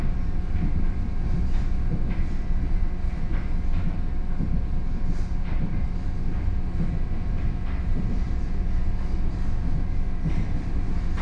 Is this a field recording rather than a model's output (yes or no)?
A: yes